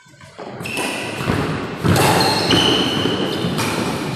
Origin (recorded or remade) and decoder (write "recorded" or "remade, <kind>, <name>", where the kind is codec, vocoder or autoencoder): recorded